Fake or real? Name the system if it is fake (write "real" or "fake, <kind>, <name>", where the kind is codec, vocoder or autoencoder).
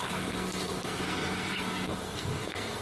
fake, codec, SNAC